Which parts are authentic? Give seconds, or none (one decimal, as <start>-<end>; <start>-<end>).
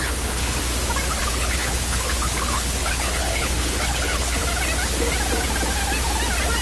0.6-1.2; 4.4-6.6